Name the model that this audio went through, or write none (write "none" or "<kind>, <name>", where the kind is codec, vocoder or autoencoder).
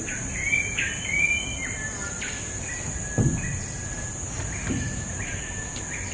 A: none